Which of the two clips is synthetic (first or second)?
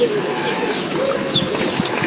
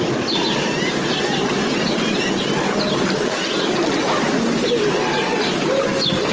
first